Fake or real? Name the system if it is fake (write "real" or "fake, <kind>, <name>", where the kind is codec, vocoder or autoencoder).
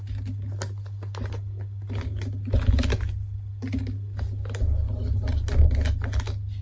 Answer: real